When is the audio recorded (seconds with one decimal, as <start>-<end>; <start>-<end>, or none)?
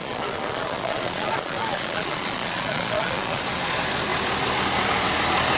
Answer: 3.4-5.6